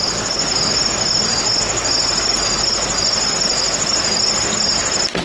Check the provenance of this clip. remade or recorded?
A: recorded